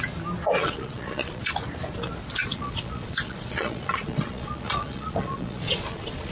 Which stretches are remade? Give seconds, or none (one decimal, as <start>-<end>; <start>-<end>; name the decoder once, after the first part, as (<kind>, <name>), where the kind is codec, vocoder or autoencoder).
0.6-1.4 (vocoder, Vocos); 2.4-6.3